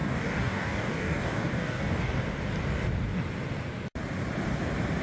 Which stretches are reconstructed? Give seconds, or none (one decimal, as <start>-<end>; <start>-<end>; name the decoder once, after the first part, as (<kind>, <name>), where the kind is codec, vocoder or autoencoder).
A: 0.0-2.2 (codec, DAC)